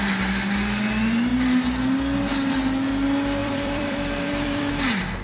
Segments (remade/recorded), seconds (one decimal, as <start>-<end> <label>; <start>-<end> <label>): 0.0-3.4 recorded; 3.4-4.7 remade; 4.7-5.2 recorded